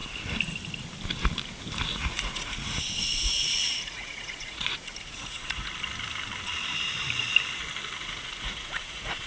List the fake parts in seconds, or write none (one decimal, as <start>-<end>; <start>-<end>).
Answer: 1.9-5.7; 8.0-9.3